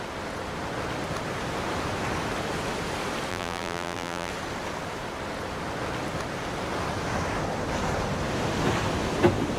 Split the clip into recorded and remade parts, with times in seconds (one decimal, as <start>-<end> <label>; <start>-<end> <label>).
0.0-3.3 recorded; 3.3-4.3 remade; 4.3-9.6 recorded